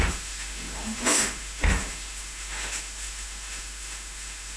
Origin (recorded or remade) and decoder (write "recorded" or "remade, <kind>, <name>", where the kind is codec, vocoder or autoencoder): remade, autoencoder, DAC-VAE